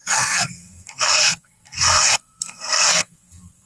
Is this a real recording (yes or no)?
no